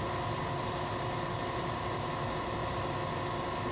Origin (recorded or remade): recorded